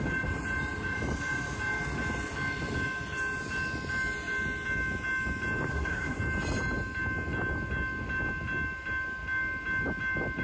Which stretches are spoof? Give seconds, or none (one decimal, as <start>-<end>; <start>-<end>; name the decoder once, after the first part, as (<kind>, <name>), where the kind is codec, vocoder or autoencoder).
5.7-6.2 (codec, SNAC)